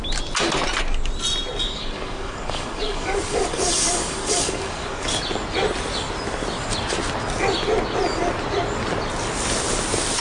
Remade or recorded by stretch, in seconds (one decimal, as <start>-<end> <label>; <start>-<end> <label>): 0.0-1.6 recorded; 1.6-5.2 remade; 5.2-10.2 recorded